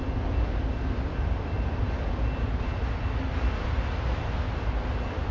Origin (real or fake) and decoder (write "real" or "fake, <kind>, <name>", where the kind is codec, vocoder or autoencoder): real